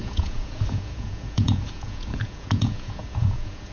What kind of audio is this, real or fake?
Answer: fake